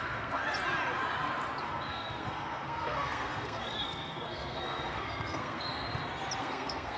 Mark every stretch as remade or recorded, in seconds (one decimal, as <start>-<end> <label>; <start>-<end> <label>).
0.0-0.4 remade; 0.4-1.6 recorded; 1.6-5.8 remade; 5.8-6.4 recorded; 6.4-7.0 remade